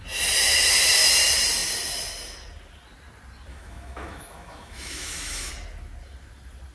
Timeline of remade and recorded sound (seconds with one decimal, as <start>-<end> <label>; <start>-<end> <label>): 0.0-3.5 recorded; 3.5-5.5 remade; 5.5-6.7 recorded

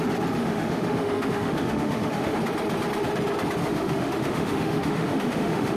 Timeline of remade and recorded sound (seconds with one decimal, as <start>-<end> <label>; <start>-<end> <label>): 0.0-0.4 recorded; 0.4-2.4 remade; 2.4-3.6 recorded; 3.6-5.8 remade

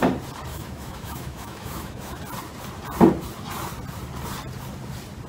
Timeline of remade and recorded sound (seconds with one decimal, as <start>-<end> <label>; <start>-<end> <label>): 0.0-0.5 recorded; 0.5-2.2 remade; 2.2-5.3 recorded

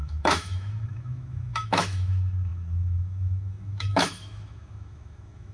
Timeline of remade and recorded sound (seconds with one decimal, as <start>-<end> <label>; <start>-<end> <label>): 0.0-5.5 remade

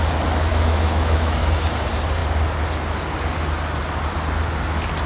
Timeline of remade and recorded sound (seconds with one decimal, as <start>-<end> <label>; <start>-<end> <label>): 0.0-0.5 recorded; 0.5-1.7 remade; 1.7-5.1 recorded